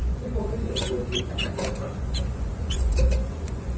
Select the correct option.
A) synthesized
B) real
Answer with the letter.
A